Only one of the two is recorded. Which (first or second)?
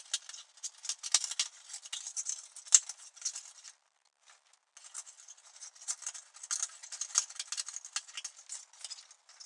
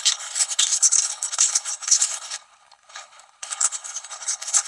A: first